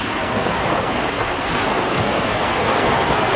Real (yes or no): no